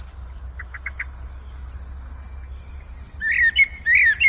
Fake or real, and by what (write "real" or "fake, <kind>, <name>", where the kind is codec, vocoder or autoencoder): real